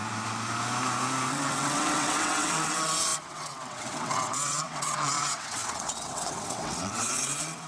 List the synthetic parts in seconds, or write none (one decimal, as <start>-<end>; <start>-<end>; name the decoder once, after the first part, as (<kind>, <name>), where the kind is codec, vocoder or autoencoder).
1.3-7.7 (vocoder, WaveNeXt)